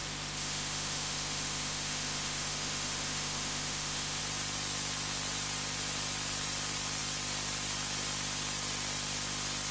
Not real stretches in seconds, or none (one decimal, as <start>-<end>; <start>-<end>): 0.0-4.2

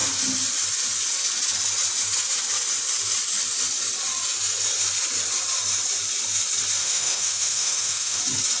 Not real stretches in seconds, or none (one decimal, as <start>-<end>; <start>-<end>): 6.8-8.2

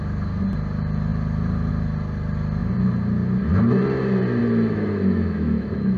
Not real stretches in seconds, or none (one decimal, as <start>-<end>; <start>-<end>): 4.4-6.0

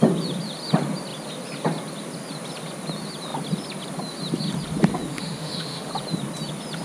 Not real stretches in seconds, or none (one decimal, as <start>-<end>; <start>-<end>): 5.1-5.9